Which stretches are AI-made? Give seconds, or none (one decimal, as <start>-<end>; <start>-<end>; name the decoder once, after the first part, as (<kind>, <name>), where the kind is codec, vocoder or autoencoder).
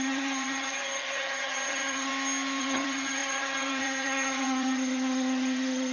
0.0-2.1 (vocoder, HiFi-GAN); 2.6-5.9